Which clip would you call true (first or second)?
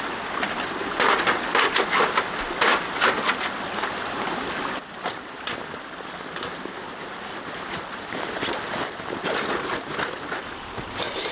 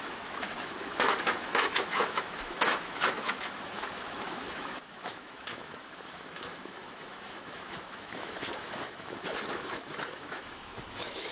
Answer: first